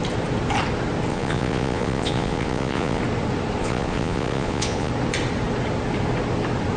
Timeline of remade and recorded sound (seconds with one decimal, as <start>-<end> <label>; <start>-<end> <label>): 0.0-1.1 recorded; 1.1-3.0 remade; 3.0-3.6 recorded; 3.6-4.9 remade; 4.9-6.8 recorded